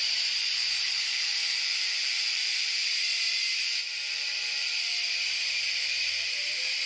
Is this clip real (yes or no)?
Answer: no